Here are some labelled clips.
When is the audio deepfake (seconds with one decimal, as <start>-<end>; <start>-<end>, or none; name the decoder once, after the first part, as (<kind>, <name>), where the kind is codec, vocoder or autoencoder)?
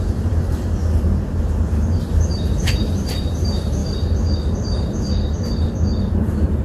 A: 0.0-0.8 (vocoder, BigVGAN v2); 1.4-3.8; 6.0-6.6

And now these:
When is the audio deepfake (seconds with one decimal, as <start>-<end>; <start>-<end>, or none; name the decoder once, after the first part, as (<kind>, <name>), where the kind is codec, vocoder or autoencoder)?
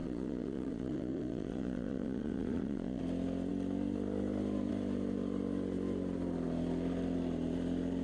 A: 0.0-3.0 (vocoder, Vocos)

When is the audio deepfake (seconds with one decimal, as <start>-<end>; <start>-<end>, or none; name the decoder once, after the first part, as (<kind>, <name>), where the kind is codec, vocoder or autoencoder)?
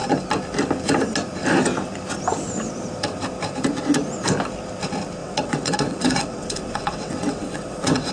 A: 5.2-8.1 (vocoder, WaveNeXt)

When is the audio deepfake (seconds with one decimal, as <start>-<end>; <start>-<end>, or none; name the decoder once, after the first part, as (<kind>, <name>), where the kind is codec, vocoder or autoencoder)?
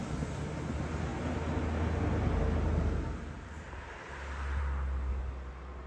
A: none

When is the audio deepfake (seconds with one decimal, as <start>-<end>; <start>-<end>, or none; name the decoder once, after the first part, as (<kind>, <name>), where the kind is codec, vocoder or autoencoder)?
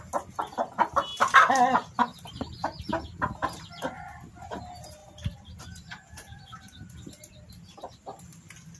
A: none